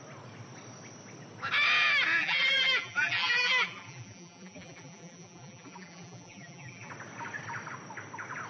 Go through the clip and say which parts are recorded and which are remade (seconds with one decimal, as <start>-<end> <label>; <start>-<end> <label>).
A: 0.0-2.2 recorded; 2.2-6.9 remade; 6.9-8.5 recorded